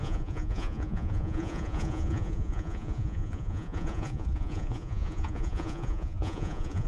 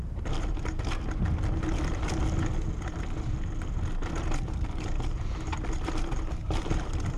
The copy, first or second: first